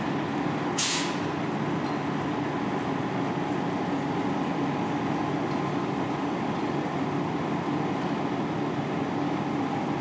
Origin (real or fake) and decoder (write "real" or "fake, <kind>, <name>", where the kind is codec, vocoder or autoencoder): real